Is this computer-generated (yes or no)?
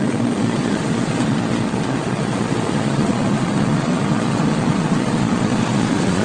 yes